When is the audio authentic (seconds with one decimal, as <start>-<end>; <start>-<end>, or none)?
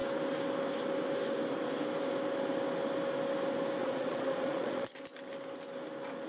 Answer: 0.0-3.8; 5.0-6.3